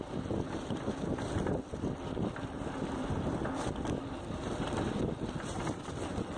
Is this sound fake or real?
real